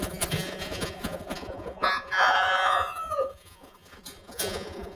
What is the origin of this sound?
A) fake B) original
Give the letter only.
A